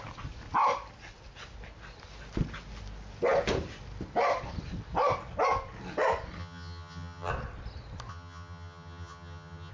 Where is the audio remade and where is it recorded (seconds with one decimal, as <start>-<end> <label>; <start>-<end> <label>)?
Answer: 0.0-6.4 recorded; 6.4-7.3 remade; 7.3-8.1 recorded; 8.1-9.7 remade